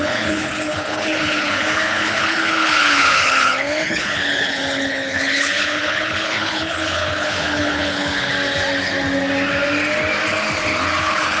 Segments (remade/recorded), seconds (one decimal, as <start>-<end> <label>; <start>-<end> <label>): 0.0-8.3 remade; 8.3-11.0 recorded; 11.0-11.4 remade